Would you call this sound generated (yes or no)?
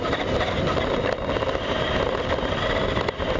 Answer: no